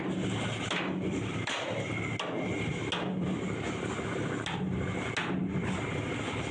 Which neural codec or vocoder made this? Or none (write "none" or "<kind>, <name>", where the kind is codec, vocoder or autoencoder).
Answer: none